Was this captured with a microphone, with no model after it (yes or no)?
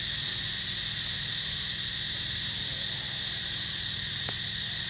yes